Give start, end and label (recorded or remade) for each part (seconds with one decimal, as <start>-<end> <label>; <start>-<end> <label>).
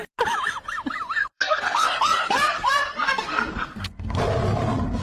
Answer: 0.0-1.2 recorded; 1.2-4.2 remade; 4.2-5.0 recorded